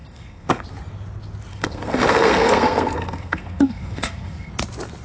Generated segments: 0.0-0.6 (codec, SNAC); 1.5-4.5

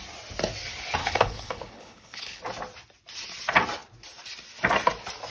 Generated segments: 1.0-2.4 (codec, HILCodec)

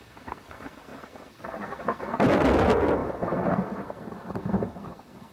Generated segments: 0.0-5.3 (codec, SNAC)

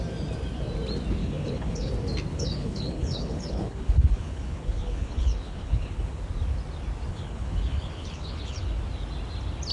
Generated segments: 1.2-1.9 (codec, HILCodec); 2.3-6.2; 7.1-8.8